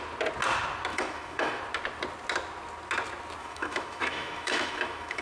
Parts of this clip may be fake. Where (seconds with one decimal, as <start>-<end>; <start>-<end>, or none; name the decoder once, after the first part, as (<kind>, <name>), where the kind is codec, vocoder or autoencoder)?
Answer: 0.9-1.6 (autoencoder, DAC-VAE); 3.4-5.2